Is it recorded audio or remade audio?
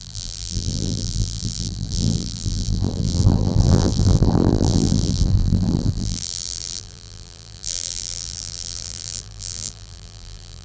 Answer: remade